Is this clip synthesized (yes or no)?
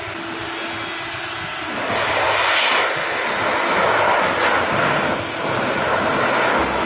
no